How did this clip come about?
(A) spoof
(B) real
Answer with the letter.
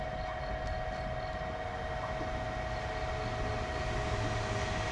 B